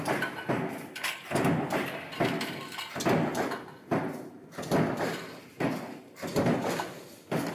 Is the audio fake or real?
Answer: real